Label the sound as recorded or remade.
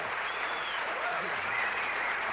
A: remade